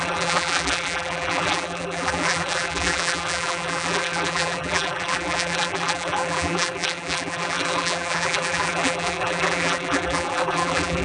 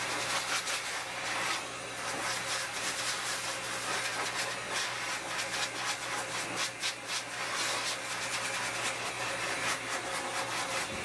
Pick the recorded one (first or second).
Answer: second